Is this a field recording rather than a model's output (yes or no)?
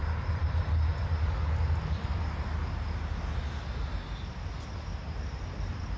yes